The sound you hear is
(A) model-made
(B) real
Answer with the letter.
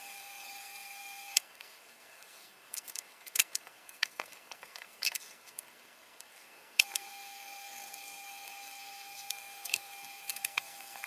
A